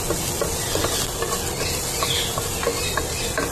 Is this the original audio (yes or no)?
yes